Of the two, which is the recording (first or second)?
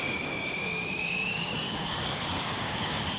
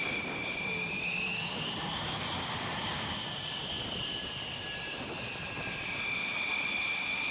second